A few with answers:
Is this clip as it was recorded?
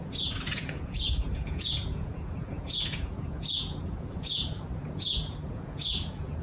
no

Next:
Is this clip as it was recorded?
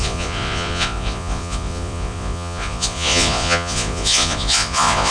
no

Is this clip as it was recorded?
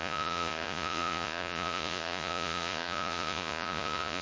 no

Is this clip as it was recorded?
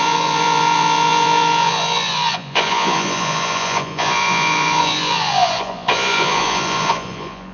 no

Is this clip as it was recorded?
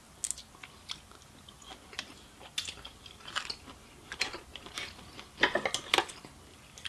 yes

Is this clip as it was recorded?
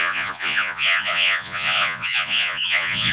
no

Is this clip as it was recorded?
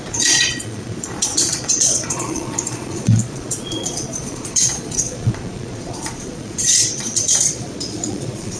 no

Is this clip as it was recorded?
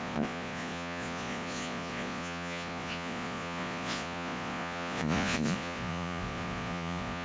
no